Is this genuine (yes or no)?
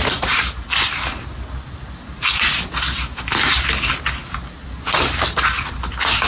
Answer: yes